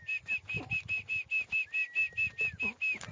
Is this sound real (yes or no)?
yes